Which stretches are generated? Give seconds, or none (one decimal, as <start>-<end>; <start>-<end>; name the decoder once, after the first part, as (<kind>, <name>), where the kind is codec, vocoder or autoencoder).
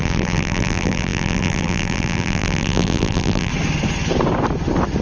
0.0-3.5 (vocoder, BigVGAN v2)